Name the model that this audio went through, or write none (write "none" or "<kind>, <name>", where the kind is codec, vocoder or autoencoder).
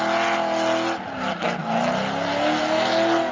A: none